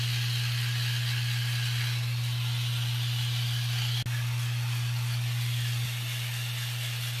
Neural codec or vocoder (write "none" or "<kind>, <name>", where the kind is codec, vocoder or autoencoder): none